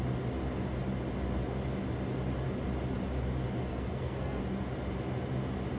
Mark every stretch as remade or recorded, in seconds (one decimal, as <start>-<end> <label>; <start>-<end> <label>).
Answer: 0.0-3.7 recorded; 3.7-4.4 remade; 4.4-5.8 recorded